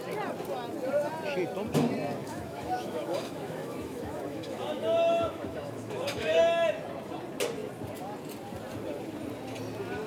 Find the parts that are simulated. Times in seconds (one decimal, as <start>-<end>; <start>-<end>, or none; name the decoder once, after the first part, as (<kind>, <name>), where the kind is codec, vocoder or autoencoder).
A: 2.2-6.4 (autoencoder, DAC-VAE)